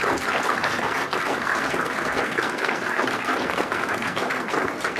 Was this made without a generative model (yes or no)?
no